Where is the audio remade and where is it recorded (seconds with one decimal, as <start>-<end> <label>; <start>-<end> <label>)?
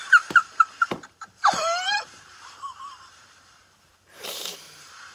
0.0-5.1 remade